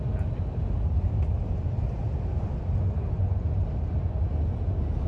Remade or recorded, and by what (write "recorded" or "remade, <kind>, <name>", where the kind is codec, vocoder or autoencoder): recorded